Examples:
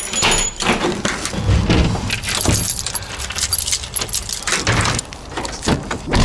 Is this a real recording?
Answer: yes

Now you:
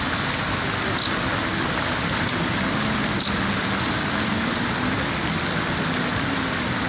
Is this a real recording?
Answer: yes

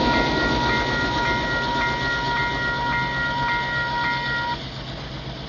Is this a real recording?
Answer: yes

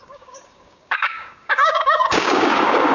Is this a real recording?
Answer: no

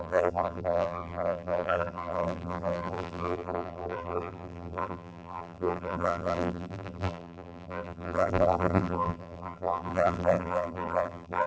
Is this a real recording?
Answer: no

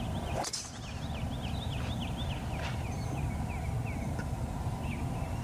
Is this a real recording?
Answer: yes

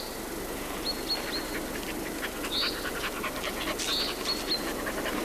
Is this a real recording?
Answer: yes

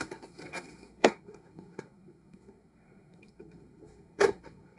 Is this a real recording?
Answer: no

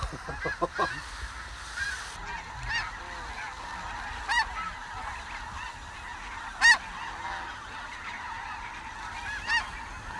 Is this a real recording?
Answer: yes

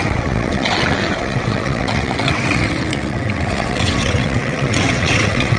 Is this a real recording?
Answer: no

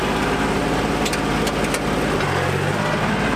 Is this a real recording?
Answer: yes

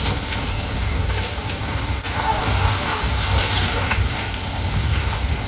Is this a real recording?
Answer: no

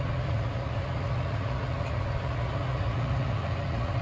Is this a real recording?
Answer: no